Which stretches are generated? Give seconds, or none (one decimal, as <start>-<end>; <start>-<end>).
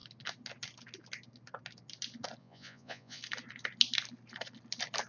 2.4-3.2